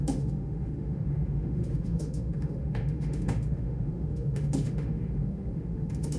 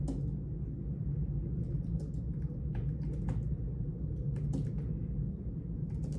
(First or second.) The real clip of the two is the second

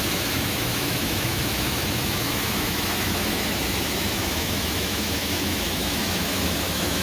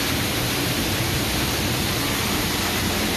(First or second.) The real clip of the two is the second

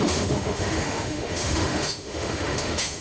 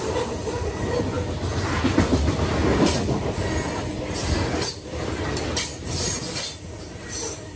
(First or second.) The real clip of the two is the second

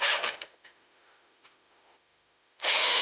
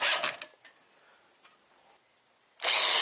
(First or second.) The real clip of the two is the second